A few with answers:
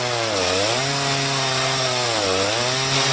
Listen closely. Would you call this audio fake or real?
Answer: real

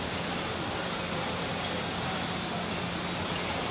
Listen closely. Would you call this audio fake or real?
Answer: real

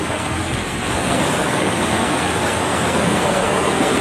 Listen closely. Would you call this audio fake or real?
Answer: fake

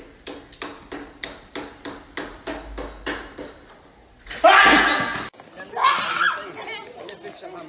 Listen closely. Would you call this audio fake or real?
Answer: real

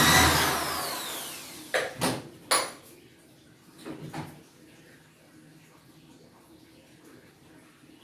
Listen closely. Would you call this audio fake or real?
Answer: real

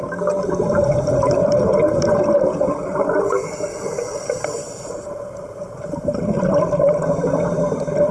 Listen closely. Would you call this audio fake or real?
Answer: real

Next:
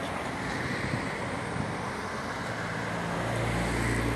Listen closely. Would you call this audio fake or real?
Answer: real